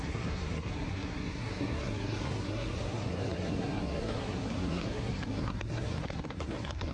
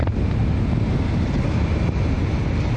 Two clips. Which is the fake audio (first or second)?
first